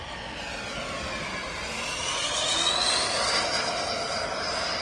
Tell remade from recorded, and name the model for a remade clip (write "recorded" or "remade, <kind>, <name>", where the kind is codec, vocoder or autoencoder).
recorded